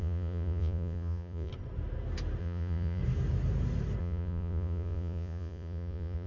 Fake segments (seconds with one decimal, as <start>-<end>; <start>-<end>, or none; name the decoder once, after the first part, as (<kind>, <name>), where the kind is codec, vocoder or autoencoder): 0.0-1.5 (vocoder, Vocos); 2.4-3.0; 4.0-6.3